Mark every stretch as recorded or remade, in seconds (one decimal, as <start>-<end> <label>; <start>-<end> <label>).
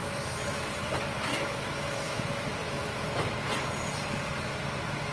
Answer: 0.0-0.7 remade; 0.7-1.3 recorded; 1.3-2.2 remade; 2.2-2.6 recorded; 2.6-3.5 remade; 3.5-5.1 recorded